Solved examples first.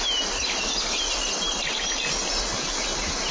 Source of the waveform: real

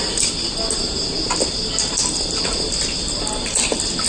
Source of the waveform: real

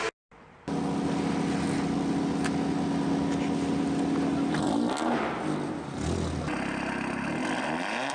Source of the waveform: real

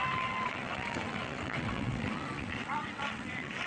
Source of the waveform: fake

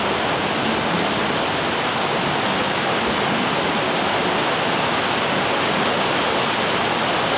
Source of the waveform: real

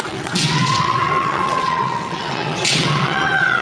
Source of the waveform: fake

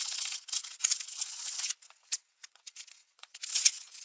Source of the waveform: fake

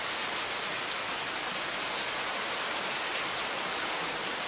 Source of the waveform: real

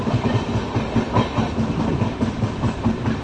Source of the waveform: real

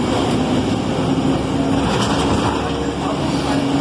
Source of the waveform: real